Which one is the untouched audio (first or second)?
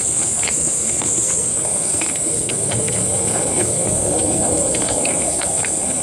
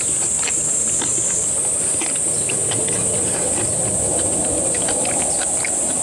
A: second